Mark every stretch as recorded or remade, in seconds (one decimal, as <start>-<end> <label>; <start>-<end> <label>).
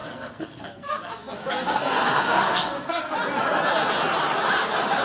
0.0-3.0 remade; 3.0-5.0 recorded